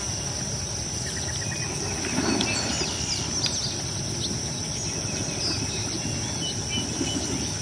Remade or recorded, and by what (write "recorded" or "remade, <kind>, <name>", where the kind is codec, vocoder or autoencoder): recorded